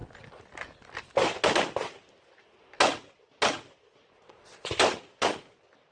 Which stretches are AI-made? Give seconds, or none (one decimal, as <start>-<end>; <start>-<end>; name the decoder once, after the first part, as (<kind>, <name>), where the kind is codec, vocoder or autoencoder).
none